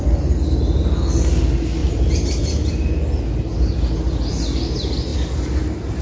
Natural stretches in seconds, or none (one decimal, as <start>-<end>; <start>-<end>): 0.0-6.0